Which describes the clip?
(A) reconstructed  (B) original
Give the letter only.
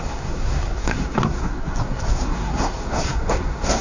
A